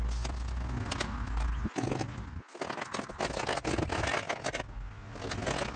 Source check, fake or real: real